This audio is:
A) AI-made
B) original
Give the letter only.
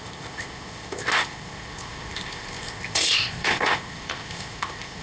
A